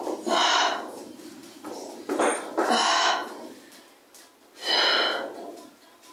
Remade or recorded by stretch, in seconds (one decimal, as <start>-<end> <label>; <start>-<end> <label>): 0.0-0.4 recorded; 0.4-2.7 remade; 2.7-3.2 recorded; 3.2-3.7 remade; 3.7-6.1 recorded